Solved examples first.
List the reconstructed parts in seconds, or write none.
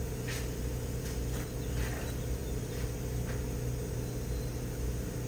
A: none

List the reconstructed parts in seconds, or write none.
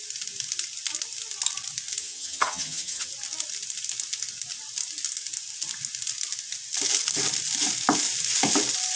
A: 2.0-3.1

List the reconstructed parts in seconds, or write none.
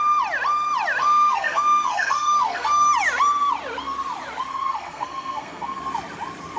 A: 1.0-2.9; 4.5-5.8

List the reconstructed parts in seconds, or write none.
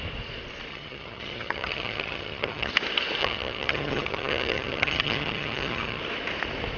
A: 0.7-2.7; 3.2-6.0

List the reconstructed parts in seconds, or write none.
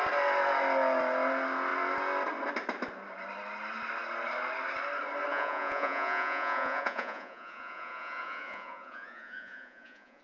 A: 5.3-10.2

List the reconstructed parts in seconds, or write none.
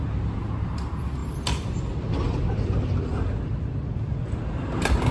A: none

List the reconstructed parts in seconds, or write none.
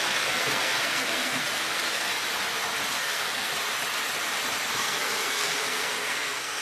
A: 0.0-2.1; 3.0-3.5; 4.7-6.6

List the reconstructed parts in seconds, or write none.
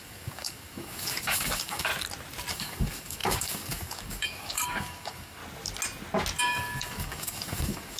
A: 0.0-1.9; 2.5-5.4; 6.4-8.0